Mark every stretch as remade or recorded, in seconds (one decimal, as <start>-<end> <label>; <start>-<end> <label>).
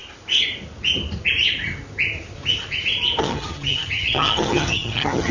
0.0-3.2 recorded; 3.2-5.3 remade